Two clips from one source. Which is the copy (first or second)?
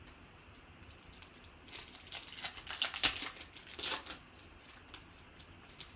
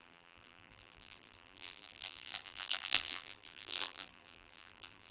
second